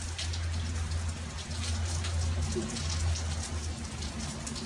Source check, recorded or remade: recorded